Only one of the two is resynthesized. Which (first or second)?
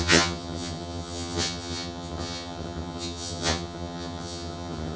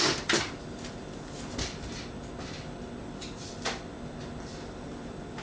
first